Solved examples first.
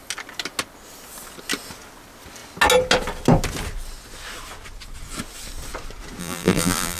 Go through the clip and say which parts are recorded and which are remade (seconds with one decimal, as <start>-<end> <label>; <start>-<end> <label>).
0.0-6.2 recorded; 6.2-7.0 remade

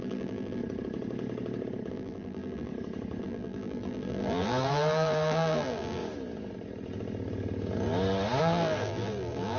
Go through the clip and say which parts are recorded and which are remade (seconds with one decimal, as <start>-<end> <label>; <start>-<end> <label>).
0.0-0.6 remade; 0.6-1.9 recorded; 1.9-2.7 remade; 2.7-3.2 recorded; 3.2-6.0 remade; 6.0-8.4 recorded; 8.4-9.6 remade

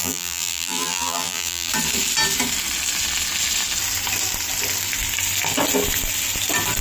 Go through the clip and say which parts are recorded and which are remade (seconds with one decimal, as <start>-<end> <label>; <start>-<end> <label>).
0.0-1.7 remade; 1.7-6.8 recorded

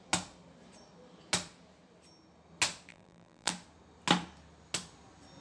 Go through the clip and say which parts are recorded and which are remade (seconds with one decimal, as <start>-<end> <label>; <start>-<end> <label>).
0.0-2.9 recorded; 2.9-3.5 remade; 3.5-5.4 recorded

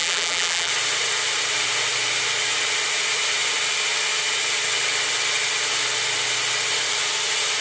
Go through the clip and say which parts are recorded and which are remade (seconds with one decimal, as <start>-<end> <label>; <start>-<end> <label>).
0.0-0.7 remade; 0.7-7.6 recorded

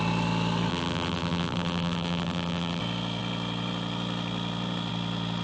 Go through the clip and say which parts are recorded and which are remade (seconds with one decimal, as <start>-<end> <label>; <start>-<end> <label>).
0.0-0.7 recorded; 0.7-2.8 remade; 2.8-5.4 recorded

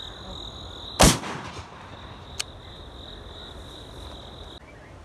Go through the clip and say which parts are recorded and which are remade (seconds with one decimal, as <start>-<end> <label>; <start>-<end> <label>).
0.0-5.0 recorded